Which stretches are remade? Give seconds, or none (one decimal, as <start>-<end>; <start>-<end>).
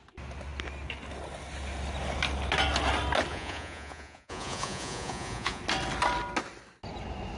3.3-5.6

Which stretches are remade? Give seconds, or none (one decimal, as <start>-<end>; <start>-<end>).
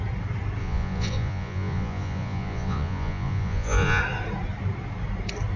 0.6-4.0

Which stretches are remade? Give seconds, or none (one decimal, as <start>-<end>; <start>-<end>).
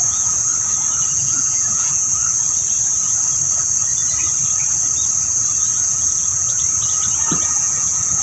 0.0-0.5; 1.1-2.2; 5.7-6.6; 7.4-8.2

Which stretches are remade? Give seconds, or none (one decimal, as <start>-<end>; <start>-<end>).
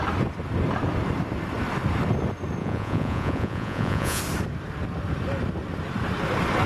2.6-4.2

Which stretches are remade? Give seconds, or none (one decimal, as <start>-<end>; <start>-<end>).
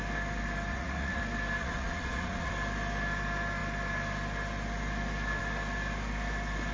0.7-1.2; 1.6-2.5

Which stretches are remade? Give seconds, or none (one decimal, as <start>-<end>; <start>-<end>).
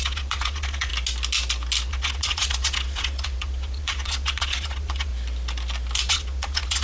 0.0-0.9; 1.9-5.1; 6.1-6.8